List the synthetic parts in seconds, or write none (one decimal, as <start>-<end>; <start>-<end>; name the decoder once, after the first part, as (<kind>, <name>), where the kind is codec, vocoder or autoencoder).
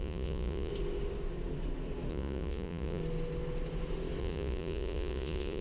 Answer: 0.0-0.7 (vocoder, Vocos); 2.1-3.0; 4.2-5.6